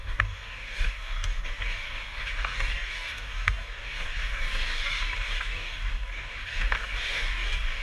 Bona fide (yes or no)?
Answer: no